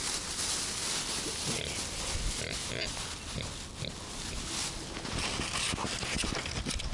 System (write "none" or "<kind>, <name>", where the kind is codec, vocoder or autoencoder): none